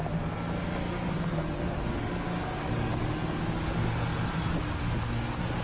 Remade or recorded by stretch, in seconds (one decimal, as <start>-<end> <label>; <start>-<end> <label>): 0.0-4.1 recorded; 4.1-4.6 remade; 4.6-5.6 recorded